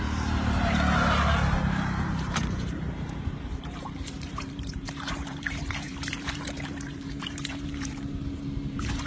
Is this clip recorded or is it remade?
remade